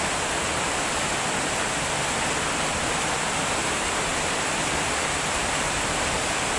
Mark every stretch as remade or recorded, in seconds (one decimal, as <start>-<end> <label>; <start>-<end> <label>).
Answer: 0.0-6.6 recorded